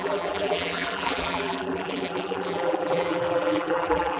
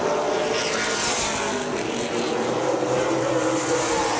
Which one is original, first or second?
second